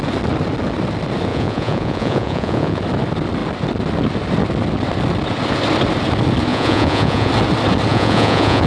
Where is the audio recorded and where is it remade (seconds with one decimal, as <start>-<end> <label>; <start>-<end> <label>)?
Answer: 0.0-1.3 recorded; 1.3-2.8 remade; 2.8-6.5 recorded; 6.5-7.3 remade; 7.3-7.9 recorded; 7.9-8.7 remade